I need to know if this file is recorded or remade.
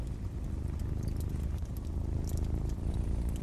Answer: recorded